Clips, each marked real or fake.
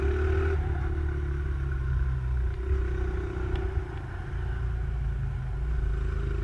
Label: real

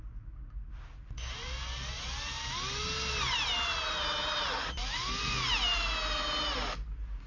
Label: real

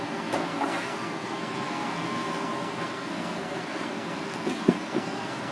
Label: fake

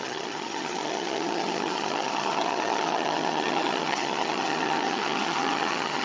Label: fake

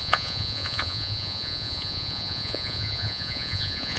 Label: fake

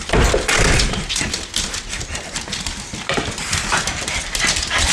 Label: fake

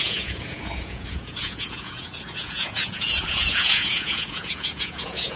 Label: fake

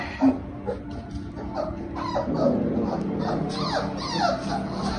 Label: real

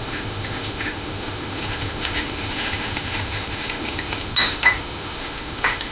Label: fake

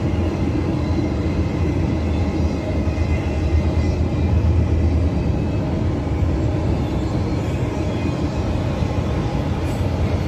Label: real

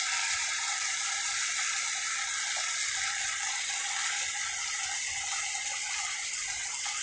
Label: real